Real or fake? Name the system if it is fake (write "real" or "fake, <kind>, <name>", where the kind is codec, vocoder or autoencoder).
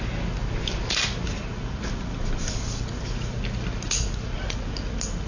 real